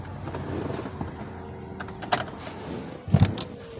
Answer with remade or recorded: recorded